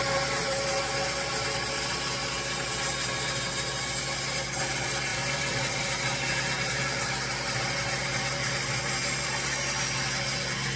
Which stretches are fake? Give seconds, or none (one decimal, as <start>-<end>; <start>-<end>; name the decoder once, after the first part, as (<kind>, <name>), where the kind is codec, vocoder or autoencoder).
5.1-5.8 (vocoder, BigVGAN v2)